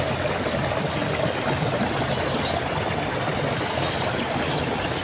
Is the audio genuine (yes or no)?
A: yes